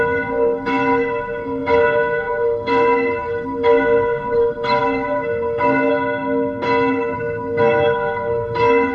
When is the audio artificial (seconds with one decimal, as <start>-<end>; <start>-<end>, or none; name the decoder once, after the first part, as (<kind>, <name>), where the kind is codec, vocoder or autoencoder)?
0.0-5.9 (codec, SNAC); 6.9-8.9